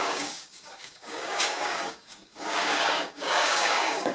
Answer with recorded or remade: remade